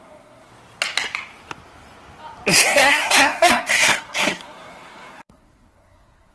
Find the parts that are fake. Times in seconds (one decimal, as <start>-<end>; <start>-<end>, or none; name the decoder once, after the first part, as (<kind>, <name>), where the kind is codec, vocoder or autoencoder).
0.0-0.5 (codec, SNAC); 2.7-6.3